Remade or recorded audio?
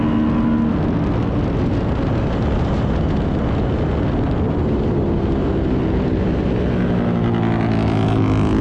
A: recorded